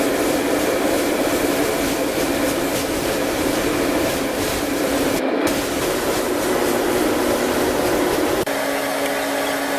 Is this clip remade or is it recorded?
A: recorded